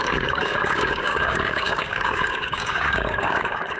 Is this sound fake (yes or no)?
yes